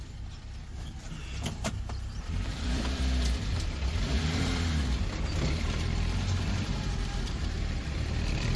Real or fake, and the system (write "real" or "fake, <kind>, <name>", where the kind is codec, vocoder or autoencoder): fake, vocoder, BigVGAN v2